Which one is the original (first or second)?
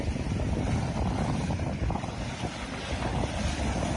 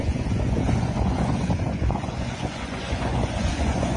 first